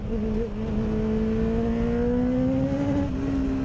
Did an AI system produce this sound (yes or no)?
no